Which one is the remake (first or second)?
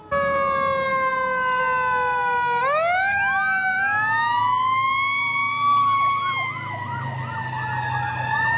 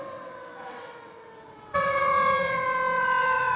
second